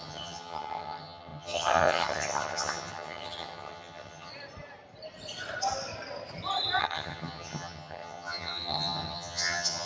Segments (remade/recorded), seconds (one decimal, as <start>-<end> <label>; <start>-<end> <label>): 0.0-4.3 remade; 4.3-6.8 recorded; 6.8-9.9 remade